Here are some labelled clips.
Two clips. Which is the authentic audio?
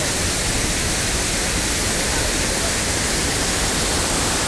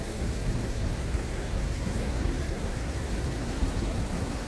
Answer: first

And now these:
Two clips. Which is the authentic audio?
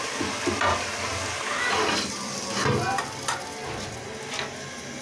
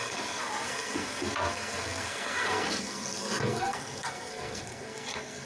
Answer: first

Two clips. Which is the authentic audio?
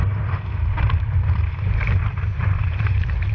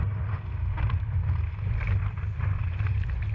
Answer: second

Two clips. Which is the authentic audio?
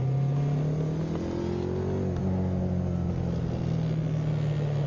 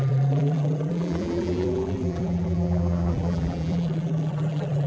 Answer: first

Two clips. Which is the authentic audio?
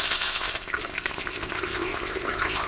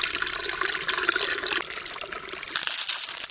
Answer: second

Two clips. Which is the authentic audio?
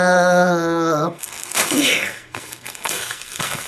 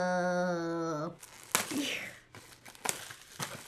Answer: second